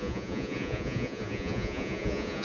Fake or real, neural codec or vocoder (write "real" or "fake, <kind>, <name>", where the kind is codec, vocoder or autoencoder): fake, vocoder, Vocos